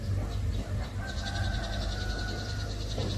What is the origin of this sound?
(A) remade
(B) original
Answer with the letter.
B